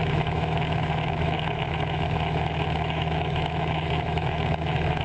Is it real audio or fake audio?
fake